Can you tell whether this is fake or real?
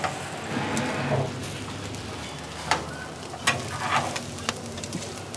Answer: real